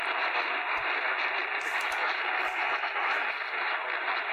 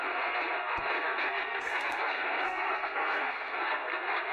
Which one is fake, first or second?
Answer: second